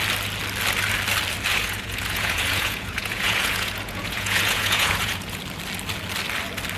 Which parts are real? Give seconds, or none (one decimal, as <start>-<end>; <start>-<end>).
0.0-1.5; 5.4-6.8